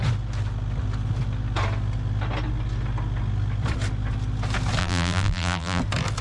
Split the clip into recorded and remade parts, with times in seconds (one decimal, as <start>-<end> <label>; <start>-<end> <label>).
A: 0.0-4.8 recorded; 4.8-5.8 remade; 5.8-6.2 recorded